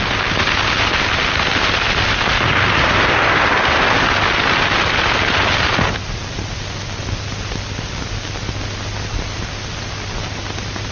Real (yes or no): yes